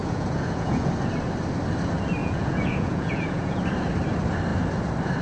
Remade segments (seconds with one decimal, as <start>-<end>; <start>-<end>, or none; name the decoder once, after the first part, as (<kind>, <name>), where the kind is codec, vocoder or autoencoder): 0.0-0.9 (vocoder, Vocos); 2.2-3.6